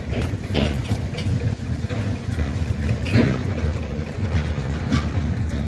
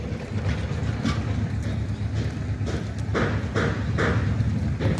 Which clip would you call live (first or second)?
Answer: second